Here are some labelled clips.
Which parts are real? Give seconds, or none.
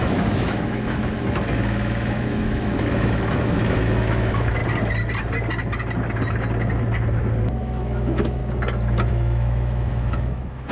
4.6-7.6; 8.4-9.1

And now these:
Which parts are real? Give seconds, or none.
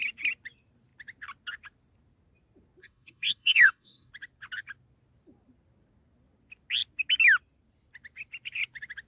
0.0-2.8; 4.1-9.1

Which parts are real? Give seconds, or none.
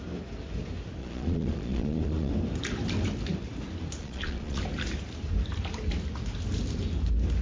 0.0-1.0; 2.3-4.0; 4.6-7.4